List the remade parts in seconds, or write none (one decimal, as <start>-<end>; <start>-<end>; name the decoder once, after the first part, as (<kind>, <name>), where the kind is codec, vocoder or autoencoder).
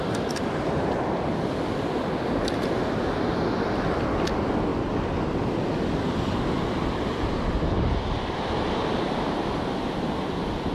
4.7-7.7 (vocoder, BigVGAN v2)